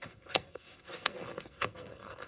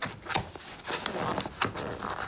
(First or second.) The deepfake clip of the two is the first